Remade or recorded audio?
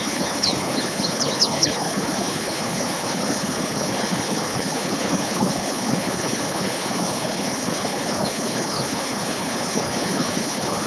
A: remade